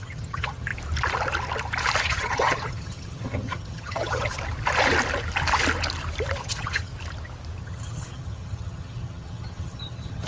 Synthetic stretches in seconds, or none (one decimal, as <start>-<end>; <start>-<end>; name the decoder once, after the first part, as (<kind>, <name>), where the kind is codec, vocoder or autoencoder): 0.0-0.7 (vocoder, HiFi-GAN); 2.0-4.3; 6.4-6.9; 7.6-10.3